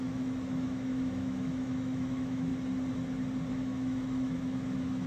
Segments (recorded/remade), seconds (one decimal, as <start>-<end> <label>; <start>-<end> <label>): 0.0-2.5 remade; 2.5-3.5 recorded; 3.5-5.1 remade